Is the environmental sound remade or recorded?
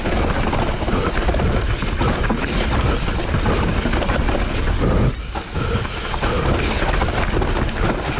recorded